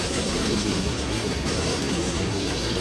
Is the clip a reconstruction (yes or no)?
yes